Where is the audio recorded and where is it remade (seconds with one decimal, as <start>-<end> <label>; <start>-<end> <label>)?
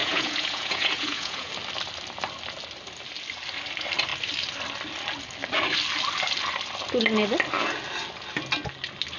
0.0-1.5 remade; 1.5-9.2 recorded